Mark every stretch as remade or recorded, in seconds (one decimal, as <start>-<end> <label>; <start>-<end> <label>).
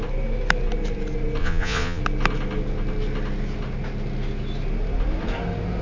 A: 0.0-1.4 recorded; 1.4-2.0 remade; 2.0-5.8 recorded